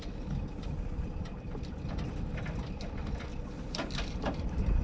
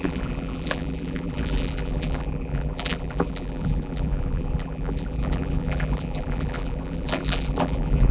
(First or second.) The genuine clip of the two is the first